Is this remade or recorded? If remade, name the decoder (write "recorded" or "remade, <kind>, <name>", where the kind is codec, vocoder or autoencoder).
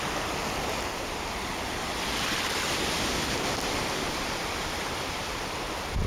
remade, vocoder, BigVGAN v2